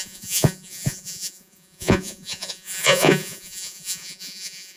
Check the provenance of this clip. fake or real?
fake